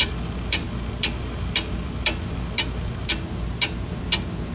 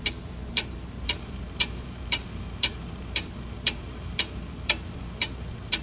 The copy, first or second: second